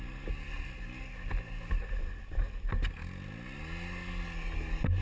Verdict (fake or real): real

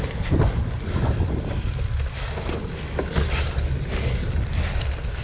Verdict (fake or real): real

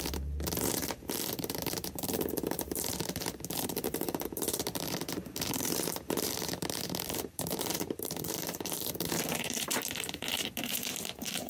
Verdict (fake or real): fake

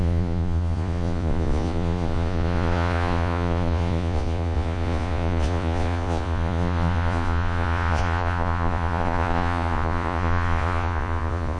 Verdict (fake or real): fake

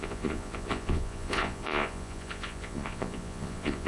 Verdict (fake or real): fake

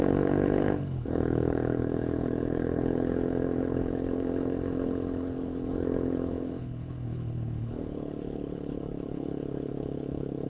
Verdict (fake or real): fake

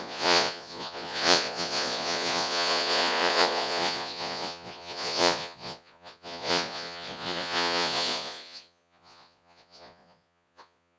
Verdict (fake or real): fake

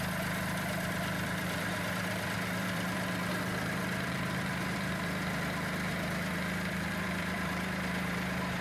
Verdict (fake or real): fake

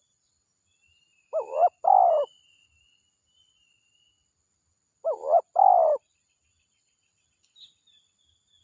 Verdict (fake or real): real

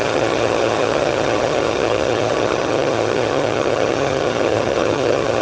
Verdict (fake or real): fake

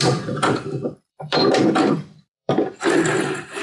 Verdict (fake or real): fake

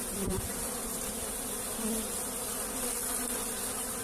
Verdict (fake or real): real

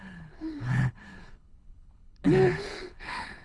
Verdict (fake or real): fake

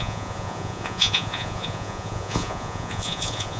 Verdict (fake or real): fake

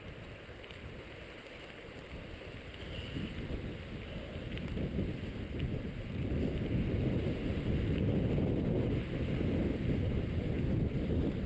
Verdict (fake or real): real